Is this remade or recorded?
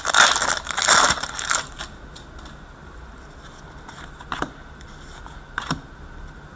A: recorded